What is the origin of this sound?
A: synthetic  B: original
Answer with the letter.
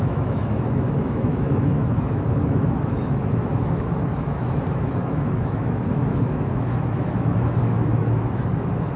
A